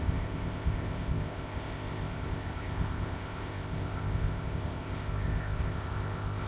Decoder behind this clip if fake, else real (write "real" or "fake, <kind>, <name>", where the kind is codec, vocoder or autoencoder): fake, codec, ZipCodec